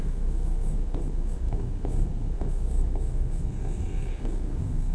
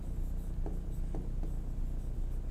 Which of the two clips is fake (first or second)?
first